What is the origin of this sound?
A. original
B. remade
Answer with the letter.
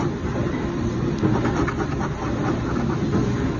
A